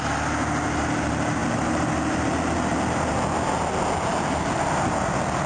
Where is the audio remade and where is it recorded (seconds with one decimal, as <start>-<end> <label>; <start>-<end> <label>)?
0.0-5.5 recorded